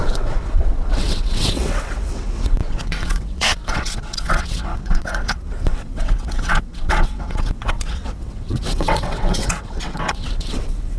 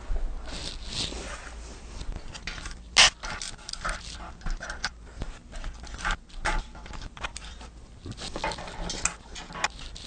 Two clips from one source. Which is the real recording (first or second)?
second